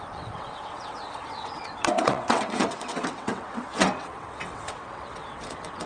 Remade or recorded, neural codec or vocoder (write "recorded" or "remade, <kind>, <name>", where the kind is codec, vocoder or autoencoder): remade, vocoder, WaveNeXt